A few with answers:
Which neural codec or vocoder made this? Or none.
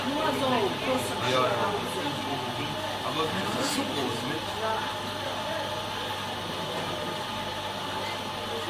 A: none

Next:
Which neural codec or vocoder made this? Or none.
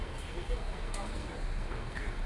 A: codec, SNAC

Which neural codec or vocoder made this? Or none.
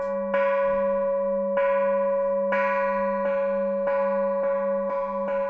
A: none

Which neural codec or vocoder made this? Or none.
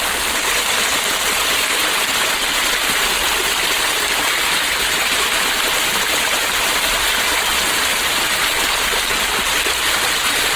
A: vocoder, BigVGAN v2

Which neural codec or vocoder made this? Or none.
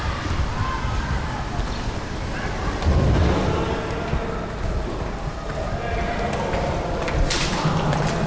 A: none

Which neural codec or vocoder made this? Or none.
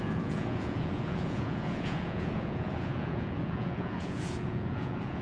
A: vocoder, Vocos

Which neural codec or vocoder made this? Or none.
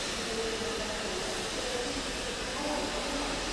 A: none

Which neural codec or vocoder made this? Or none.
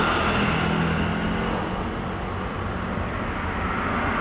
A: none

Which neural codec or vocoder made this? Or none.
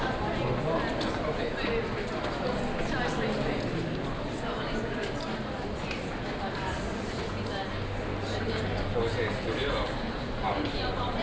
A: none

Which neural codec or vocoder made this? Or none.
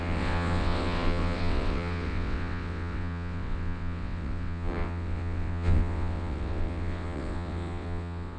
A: vocoder, WaveNeXt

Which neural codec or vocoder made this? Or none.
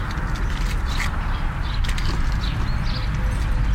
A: none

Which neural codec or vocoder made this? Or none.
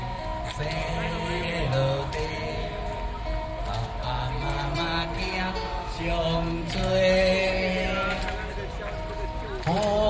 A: none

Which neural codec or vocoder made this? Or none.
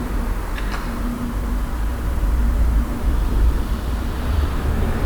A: vocoder, BigVGAN v2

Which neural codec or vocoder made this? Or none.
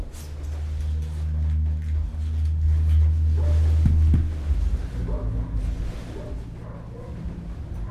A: none